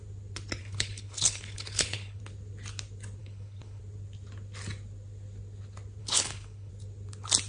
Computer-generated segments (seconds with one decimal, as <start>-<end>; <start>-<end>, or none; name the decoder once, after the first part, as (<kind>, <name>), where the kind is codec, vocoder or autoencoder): 0.6-2.2 (codec, HILCodec); 3.2-3.8; 6.0-6.7